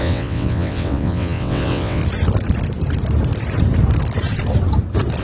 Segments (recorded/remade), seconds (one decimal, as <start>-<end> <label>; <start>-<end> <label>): 0.0-2.0 remade; 2.0-5.2 recorded